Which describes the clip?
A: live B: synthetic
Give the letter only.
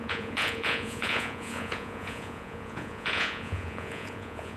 B